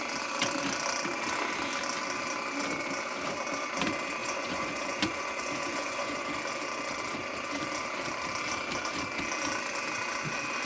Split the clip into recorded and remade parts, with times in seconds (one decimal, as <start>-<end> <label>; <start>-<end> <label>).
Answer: 0.0-4.2 recorded; 4.2-6.3 remade; 6.3-10.7 recorded

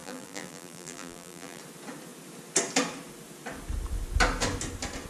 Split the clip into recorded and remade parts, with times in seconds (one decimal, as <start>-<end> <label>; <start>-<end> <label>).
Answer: 0.0-1.6 remade; 1.6-5.1 recorded